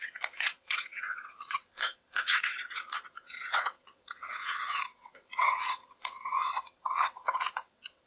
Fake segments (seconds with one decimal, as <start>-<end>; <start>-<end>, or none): 0.0-8.1